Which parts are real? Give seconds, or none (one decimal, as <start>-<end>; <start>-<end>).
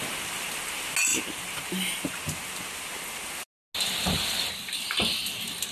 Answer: 0.0-5.7